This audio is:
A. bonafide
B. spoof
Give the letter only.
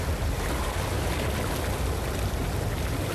A